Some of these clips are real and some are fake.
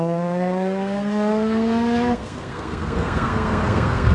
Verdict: fake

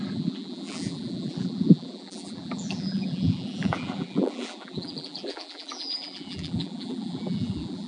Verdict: fake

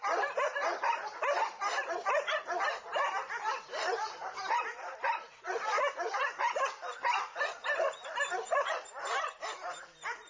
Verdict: fake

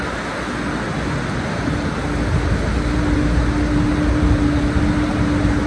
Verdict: real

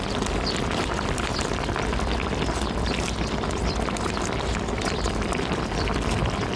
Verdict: real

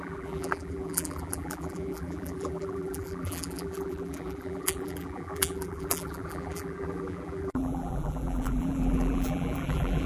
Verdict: fake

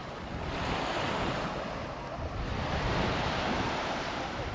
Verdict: real